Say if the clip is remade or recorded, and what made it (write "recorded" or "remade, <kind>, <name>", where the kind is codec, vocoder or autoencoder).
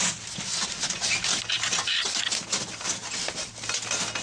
recorded